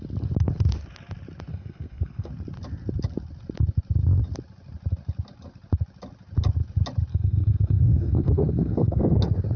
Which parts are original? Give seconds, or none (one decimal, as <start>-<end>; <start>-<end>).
0.0-1.5; 2.3-7.1; 9.2-9.6